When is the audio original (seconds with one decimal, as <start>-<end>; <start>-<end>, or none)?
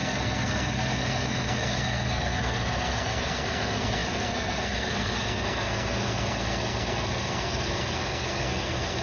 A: none